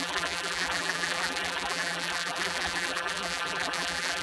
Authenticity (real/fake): fake